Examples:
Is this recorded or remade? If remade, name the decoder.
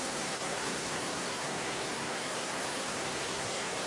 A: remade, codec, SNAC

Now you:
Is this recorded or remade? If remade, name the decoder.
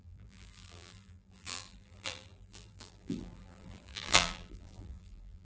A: remade, vocoder, BigVGAN v2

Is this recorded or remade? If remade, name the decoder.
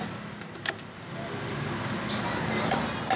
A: recorded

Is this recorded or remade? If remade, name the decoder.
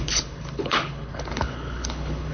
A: remade, codec, HILCodec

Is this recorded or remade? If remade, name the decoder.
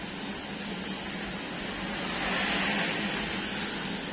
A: recorded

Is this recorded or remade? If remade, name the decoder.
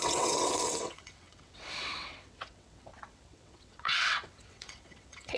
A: remade, vocoder, WaveNeXt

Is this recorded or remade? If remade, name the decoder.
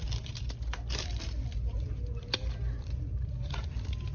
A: remade, vocoder, BigVGAN v2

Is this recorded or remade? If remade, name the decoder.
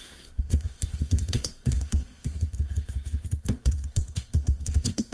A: remade, codec, SNAC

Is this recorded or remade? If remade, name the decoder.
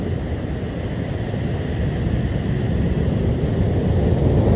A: recorded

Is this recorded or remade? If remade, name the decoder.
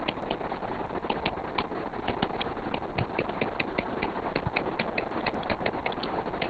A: recorded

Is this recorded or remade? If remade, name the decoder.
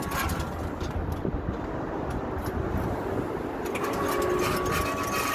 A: recorded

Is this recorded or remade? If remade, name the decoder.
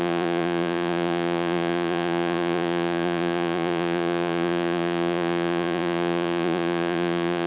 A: remade, vocoder, Vocos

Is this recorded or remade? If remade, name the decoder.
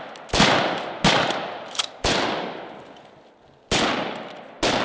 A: recorded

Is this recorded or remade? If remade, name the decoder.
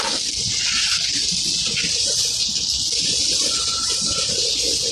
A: recorded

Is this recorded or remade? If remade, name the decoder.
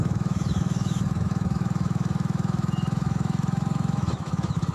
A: remade, autoencoder, DAC-VAE